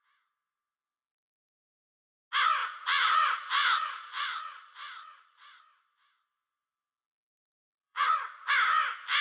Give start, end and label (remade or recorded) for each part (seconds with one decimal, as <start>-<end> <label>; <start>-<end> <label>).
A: 0.0-2.6 recorded; 2.6-5.6 remade; 5.6-7.7 recorded; 7.7-8.5 remade; 8.5-9.2 recorded